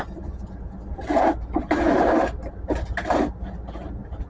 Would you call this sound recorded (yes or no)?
yes